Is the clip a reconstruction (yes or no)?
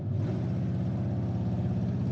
no